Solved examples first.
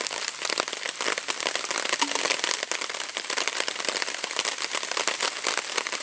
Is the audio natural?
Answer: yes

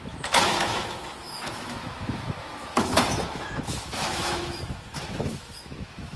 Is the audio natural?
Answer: no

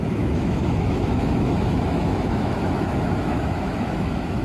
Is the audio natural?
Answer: no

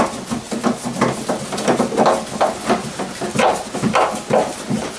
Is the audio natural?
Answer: yes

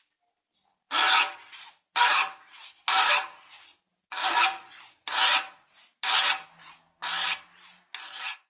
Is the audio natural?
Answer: yes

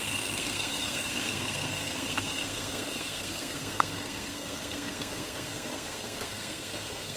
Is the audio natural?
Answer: no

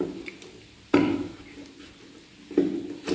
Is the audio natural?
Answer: yes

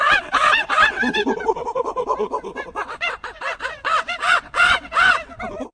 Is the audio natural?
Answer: no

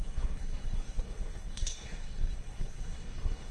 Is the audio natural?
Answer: no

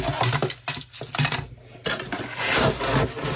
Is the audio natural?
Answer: yes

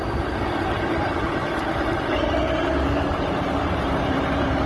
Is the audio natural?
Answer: no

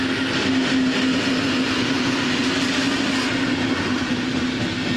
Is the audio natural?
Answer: yes